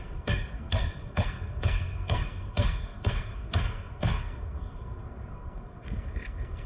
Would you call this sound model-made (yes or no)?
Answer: yes